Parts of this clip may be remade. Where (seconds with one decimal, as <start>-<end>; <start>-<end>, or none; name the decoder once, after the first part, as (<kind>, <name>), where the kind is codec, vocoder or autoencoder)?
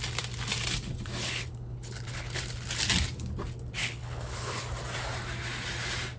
1.2-2.4 (codec, HILCodec); 3.8-4.6